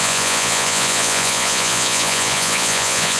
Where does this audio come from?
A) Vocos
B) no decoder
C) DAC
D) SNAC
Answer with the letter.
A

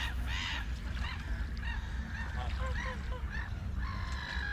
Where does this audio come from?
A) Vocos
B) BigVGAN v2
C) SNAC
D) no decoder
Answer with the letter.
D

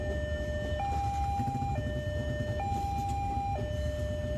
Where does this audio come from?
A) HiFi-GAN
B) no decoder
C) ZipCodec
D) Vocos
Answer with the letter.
B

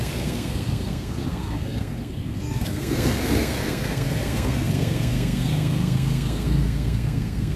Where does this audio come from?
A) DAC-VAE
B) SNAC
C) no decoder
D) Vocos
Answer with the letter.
B